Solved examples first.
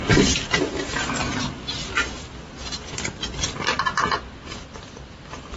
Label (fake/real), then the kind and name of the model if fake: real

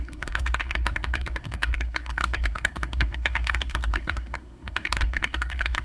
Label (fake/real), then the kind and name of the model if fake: fake, codec, SNAC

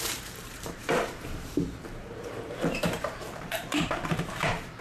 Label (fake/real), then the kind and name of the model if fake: fake, vocoder, BigVGAN v2